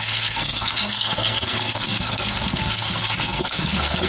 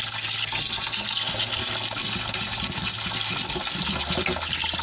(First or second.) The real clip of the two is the second